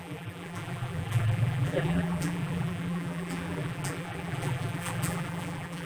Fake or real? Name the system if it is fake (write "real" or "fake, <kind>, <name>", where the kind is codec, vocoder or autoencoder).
fake, vocoder, BigVGAN v2